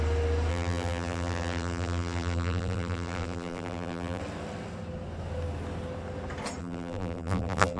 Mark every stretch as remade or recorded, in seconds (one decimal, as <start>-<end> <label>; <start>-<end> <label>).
0.0-0.5 recorded; 0.5-4.2 remade; 4.2-6.6 recorded; 6.6-7.8 remade